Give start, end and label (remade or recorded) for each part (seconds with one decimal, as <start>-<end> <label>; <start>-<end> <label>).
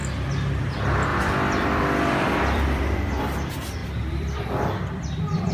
0.0-0.6 recorded; 0.6-5.5 remade